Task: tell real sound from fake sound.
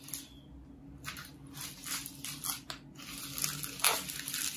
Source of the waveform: real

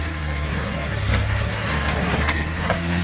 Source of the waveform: fake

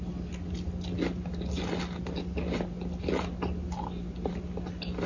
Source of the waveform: real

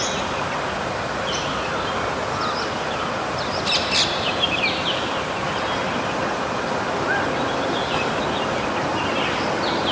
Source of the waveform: real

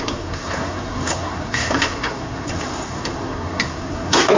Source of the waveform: fake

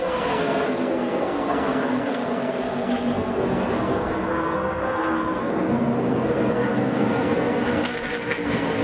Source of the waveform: fake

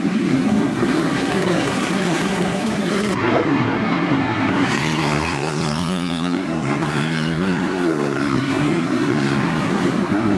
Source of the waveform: fake